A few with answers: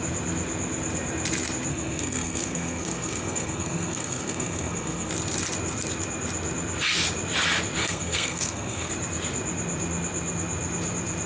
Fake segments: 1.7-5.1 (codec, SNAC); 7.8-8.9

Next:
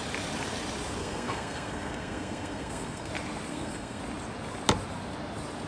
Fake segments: 1.0-3.1 (codec, SNAC); 3.5-4.0